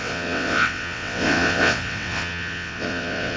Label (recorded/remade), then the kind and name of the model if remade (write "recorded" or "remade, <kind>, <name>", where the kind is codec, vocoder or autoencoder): remade, vocoder, WaveNeXt